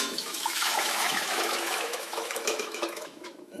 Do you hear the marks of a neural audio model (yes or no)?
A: yes